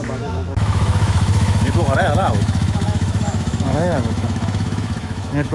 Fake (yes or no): yes